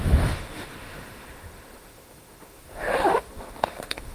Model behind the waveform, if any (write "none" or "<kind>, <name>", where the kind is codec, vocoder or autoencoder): autoencoder, DAC-VAE